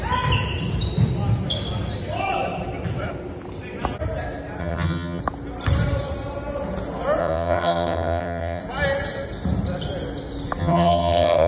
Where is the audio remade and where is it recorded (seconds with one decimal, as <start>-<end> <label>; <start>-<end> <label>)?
0.0-4.6 recorded; 4.6-5.2 remade; 5.2-7.2 recorded; 7.2-8.6 remade; 8.6-10.6 recorded; 10.6-11.5 remade